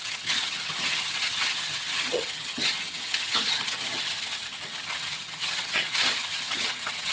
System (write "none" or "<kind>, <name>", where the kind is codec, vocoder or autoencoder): vocoder, HiFi-GAN